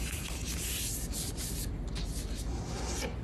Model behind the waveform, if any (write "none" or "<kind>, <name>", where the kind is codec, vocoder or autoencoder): none